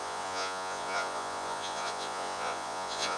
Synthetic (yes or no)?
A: yes